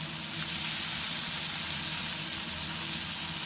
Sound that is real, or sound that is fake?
real